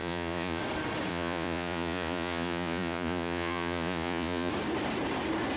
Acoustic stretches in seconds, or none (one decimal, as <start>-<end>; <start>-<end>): 0.6-1.1; 4.5-5.6